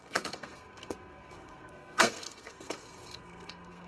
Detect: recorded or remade remade